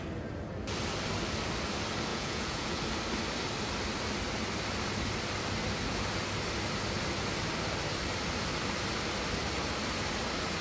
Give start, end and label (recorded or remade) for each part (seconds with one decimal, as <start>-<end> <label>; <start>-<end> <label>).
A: 0.0-2.1 recorded; 2.1-2.8 remade; 2.8-10.6 recorded